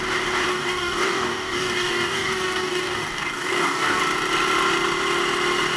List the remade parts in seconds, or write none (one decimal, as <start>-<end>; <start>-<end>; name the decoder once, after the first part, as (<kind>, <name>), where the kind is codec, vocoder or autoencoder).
0.5-4.0 (codec, DAC)